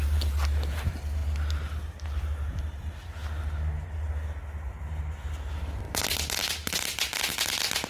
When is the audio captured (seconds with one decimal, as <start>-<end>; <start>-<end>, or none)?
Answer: 0.0-7.9